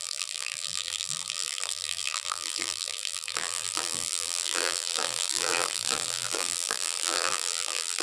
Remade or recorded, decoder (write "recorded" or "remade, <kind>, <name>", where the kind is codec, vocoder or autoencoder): remade, vocoder, BigVGAN v2